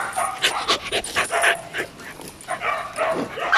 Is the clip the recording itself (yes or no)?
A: yes